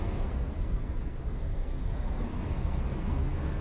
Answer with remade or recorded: remade